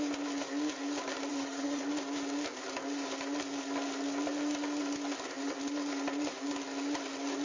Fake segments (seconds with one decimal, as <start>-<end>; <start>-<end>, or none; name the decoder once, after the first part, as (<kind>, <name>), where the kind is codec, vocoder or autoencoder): 1.3-1.8 (vocoder, HiFi-GAN)